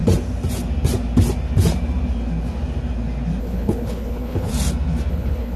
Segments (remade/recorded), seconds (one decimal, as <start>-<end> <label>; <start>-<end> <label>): 0.0-3.4 recorded; 3.4-4.5 remade; 4.5-5.1 recorded; 5.1-5.6 remade